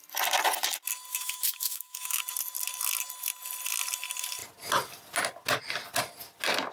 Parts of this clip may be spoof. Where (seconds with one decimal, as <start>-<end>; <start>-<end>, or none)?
1.1-2.2